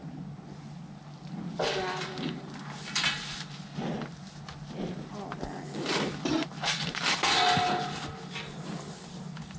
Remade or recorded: recorded